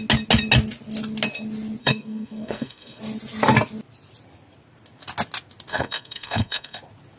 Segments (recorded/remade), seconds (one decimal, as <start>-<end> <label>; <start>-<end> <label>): 0.0-1.8 recorded; 1.8-3.0 remade; 3.0-5.7 recorded; 5.7-6.8 remade; 6.8-7.2 recorded